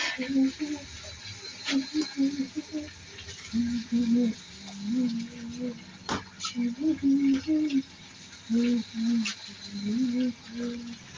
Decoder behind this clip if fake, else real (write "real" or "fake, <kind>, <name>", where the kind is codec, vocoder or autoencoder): real